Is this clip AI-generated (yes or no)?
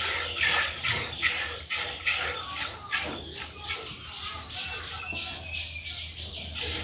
no